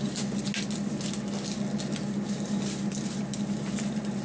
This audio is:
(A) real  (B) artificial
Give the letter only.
A